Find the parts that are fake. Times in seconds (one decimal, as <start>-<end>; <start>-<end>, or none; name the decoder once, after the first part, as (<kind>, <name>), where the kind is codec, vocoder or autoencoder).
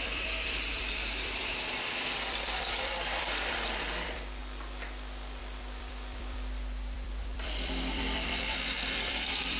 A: 0.0-4.4 (vocoder, BigVGAN v2); 5.4-9.6